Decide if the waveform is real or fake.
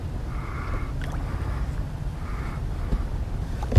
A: real